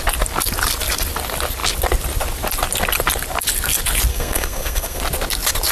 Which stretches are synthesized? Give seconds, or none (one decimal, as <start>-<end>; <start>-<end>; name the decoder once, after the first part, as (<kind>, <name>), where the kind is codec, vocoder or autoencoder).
4.1-5.0 (codec, SNAC)